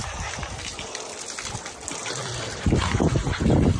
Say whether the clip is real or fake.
fake